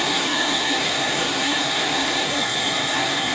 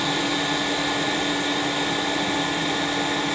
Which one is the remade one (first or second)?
first